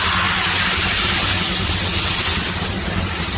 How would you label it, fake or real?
real